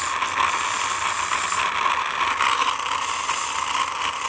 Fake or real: real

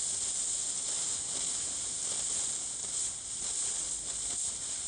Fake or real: real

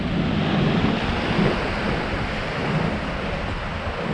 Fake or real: real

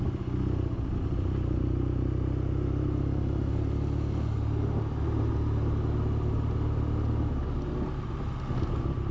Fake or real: real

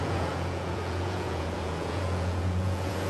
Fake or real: fake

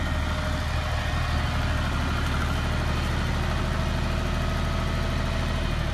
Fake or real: real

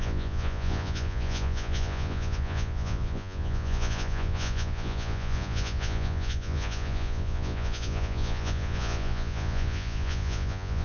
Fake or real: fake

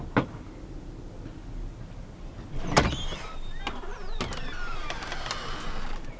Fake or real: real